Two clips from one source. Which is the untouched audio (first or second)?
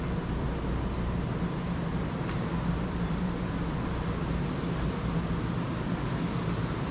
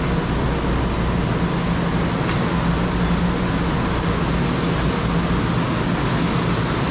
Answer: second